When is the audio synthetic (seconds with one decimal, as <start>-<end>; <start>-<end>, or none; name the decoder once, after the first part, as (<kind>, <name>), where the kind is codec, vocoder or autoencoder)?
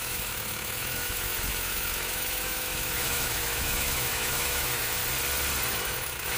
0.0-5.0 (autoencoder, DAC-VAE); 5.7-6.4